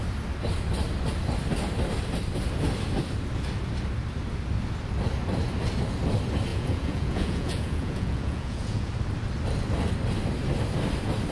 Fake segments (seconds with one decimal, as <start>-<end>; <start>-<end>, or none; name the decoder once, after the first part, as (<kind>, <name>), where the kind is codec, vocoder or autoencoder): 6.5-8.9 (vocoder, Vocos)